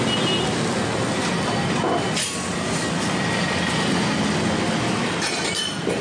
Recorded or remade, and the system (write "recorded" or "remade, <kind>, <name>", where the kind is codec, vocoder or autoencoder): recorded